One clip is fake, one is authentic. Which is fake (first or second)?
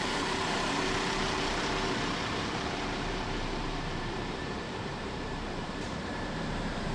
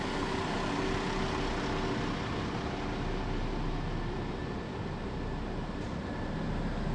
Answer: first